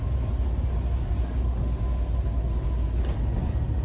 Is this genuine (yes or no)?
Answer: yes